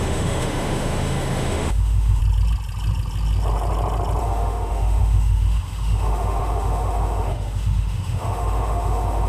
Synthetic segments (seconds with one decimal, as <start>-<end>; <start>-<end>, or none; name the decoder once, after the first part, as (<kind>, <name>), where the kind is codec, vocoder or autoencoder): 0.0-2.2 (autoencoder, DAC-VAE); 4.2-9.3